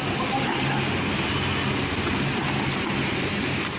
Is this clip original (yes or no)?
yes